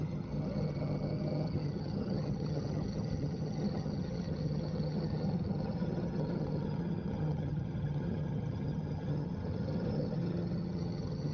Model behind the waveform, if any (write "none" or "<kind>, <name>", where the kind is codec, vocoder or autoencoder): vocoder, HiFi-GAN